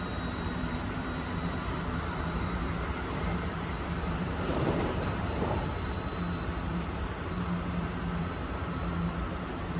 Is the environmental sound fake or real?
fake